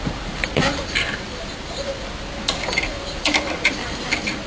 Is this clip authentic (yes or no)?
no